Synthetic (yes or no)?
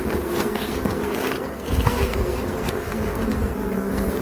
yes